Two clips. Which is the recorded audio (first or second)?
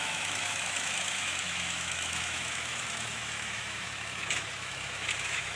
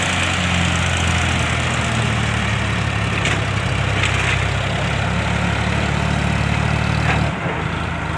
second